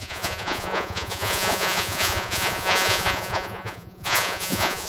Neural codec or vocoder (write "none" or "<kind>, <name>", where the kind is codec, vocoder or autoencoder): vocoder, Vocos